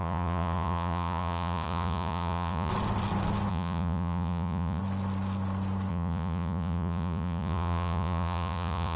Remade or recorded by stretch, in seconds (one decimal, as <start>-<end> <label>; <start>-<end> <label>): 0.0-2.7 remade; 2.7-3.5 recorded; 3.5-4.8 remade; 4.8-5.9 recorded; 5.9-9.0 remade